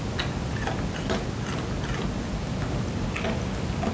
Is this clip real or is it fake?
real